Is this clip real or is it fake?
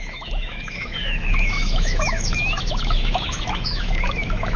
fake